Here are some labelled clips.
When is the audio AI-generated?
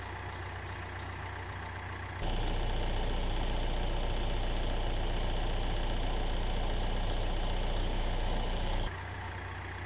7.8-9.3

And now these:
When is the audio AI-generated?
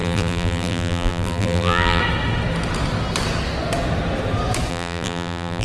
0.0-2.0; 4.7-5.6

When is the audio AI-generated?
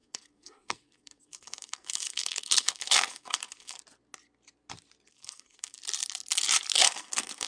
0.0-3.8; 5.1-5.8; 6.8-7.5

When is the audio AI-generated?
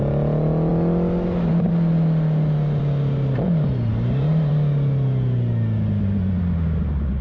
3.9-4.5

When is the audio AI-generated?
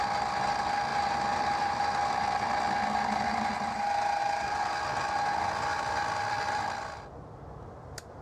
0.9-1.8; 5.7-7.2